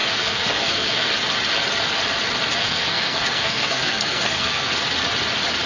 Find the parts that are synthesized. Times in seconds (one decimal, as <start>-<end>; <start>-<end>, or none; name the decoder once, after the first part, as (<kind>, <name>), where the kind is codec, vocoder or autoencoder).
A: 0.0-1.1 (codec, SNAC); 2.6-4.7